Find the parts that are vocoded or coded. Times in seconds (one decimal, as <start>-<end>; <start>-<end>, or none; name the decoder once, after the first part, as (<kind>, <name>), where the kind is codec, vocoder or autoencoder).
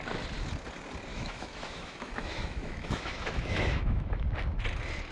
1.1-4.2 (autoencoder, DAC-VAE)